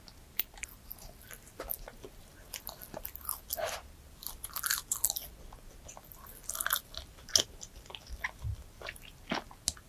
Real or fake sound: real